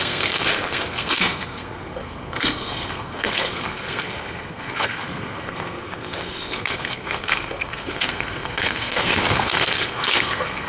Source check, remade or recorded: remade